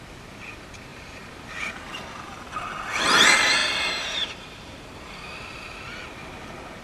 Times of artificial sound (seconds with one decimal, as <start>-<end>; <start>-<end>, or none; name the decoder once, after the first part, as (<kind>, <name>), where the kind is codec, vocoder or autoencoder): 0.9-2.6 (vocoder, BigVGAN v2); 3.6-4.6